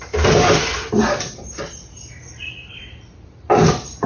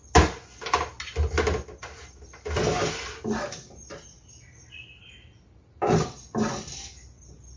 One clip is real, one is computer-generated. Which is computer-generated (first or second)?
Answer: first